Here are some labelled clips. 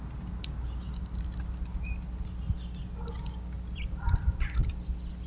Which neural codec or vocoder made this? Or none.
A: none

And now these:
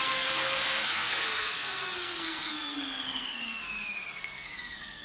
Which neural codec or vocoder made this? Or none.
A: codec, SNAC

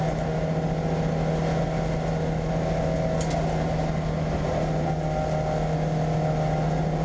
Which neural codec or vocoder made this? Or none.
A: none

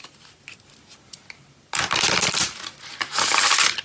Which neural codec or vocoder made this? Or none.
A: none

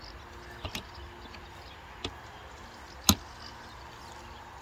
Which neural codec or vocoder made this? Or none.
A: none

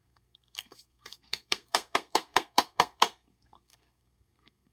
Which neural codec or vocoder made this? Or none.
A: codec, SNAC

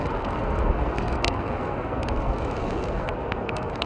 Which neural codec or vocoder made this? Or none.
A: codec, SNAC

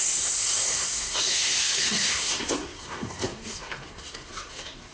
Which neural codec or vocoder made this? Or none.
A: codec, SNAC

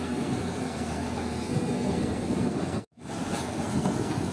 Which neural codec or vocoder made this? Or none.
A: codec, SNAC